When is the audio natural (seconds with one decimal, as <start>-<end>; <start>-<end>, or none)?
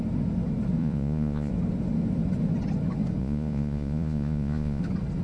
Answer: 0.0-0.8; 1.5-3.2; 4.8-5.2